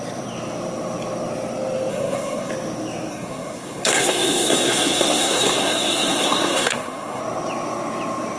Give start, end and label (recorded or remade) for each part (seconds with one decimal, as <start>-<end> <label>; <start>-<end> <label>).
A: 0.0-1.9 recorded; 1.9-2.5 remade; 2.5-3.1 recorded; 3.1-7.2 remade; 7.2-8.4 recorded